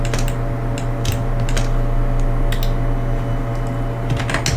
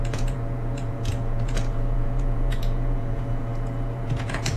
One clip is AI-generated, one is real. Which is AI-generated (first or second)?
second